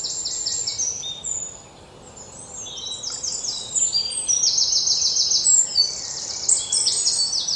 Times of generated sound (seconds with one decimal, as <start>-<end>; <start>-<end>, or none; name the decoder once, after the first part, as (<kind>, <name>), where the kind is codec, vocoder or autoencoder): none